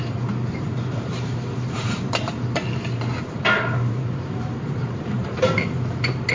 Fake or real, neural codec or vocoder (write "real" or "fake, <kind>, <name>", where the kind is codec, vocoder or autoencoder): fake, vocoder, BigVGAN v2